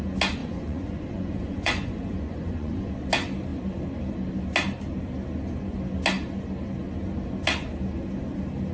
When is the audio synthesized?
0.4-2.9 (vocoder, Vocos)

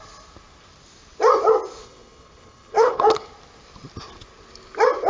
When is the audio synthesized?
1.8-3.3 (codec, HILCodec)

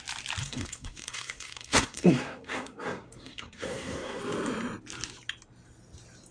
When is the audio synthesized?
0.4-4.2 (codec, SNAC)

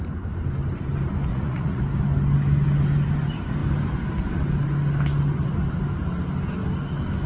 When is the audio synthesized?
1.3-1.8 (vocoder, Vocos)

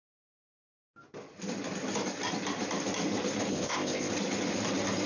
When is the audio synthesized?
3.5-4.1 (codec, ZipCodec)

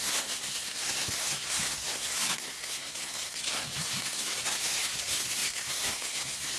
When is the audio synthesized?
0.0-6.6 (codec, SNAC)